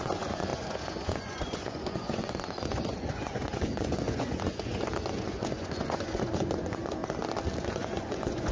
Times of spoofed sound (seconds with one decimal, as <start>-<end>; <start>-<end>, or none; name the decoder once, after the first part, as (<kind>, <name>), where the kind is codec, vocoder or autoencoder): 0.0-7.0 (vocoder, Vocos); 7.6-8.5